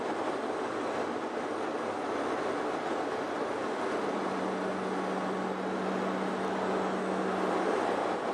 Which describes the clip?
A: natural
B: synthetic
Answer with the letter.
A